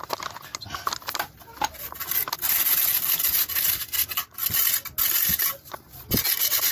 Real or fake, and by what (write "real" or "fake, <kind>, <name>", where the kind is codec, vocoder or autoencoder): real